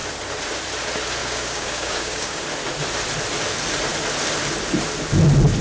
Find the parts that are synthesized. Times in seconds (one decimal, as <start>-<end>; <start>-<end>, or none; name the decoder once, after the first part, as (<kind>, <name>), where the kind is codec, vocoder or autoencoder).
1.2-2.4 (codec, DAC)